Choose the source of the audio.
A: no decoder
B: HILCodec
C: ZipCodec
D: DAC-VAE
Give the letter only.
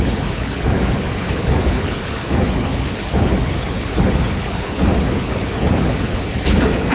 B